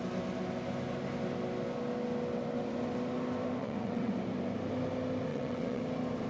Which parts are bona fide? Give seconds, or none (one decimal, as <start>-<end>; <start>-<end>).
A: 0.0-3.6; 4.1-5.3; 5.8-6.3